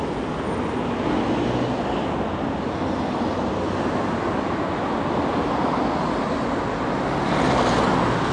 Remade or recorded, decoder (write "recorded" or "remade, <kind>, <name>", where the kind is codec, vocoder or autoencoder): recorded